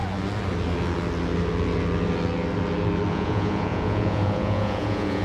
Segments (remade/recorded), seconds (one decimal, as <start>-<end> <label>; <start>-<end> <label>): 0.0-3.1 recorded; 3.1-5.2 remade